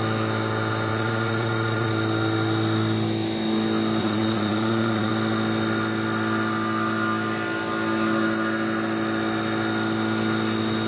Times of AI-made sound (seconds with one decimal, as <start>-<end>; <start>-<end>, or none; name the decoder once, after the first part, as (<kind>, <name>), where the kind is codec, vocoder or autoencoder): 0.9-1.9 (vocoder, Vocos); 4.0-5.1